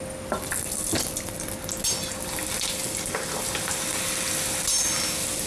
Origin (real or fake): real